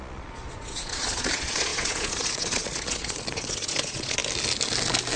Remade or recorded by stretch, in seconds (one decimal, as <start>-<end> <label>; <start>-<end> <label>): 0.0-4.2 remade; 4.2-5.2 recorded